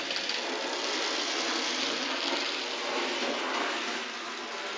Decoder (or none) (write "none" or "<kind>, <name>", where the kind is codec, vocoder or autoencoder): none